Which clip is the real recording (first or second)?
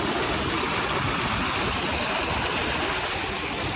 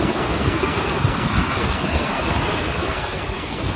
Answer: first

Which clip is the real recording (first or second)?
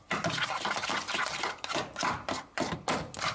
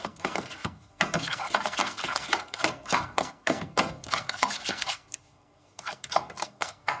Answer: first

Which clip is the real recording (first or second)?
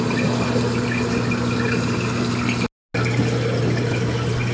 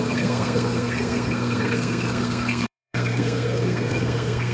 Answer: first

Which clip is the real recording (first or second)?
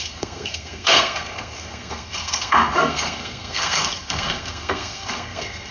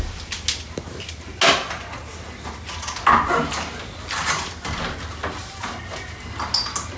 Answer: second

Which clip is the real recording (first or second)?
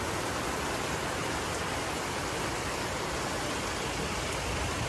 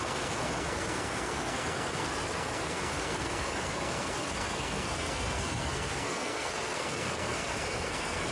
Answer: first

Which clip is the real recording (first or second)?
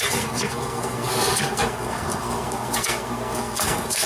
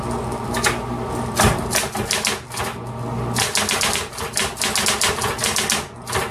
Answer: second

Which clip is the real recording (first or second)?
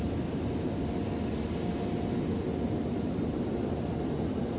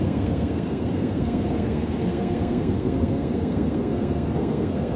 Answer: first